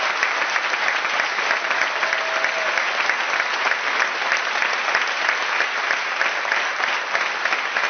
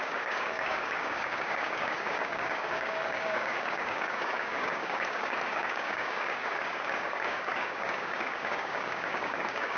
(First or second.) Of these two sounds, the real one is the first